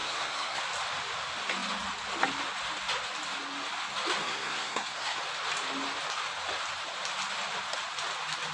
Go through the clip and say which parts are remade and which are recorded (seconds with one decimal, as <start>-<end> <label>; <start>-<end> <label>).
0.0-0.6 remade; 0.6-4.2 recorded; 4.2-5.2 remade; 5.2-8.5 recorded

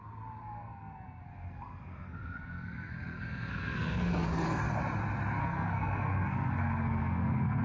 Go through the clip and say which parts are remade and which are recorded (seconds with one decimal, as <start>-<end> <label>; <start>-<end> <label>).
0.0-0.4 recorded; 0.4-4.6 remade; 4.6-5.4 recorded; 5.4-7.6 remade

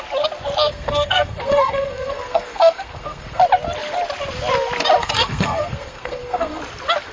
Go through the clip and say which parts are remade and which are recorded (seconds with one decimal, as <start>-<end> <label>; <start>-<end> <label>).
0.0-0.7 recorded; 0.7-3.4 remade; 3.4-5.0 recorded; 5.0-6.6 remade; 6.6-7.1 recorded

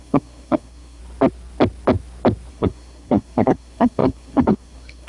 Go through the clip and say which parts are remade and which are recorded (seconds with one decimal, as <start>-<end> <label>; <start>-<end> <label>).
0.0-1.0 remade; 1.0-2.5 recorded; 2.5-5.1 remade

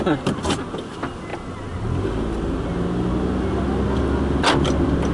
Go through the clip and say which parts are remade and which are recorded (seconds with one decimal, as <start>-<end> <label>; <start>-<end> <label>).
0.0-5.1 recorded